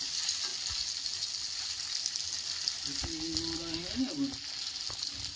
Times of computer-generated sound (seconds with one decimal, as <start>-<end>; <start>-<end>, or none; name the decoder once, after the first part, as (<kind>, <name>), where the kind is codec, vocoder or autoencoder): none